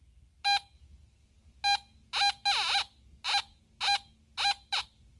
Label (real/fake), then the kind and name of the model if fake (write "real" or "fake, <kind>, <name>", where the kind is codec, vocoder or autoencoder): real